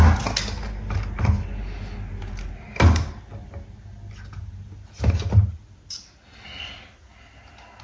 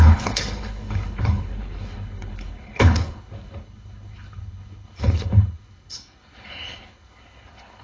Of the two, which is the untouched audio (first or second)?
first